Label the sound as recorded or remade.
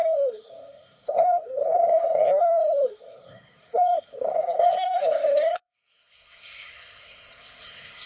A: remade